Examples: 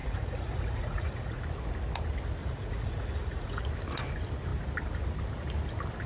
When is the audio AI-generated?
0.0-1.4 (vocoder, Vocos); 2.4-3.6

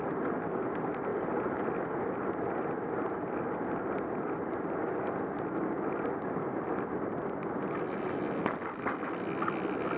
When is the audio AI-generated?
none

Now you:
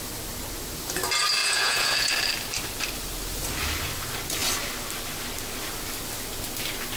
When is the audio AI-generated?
1.4-2.1 (vocoder, Vocos)